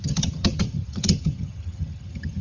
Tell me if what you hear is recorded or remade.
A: remade